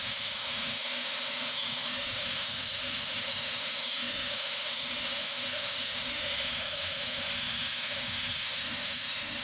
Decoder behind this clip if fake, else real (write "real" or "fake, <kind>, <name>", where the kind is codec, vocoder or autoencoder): fake, autoencoder, DAC-VAE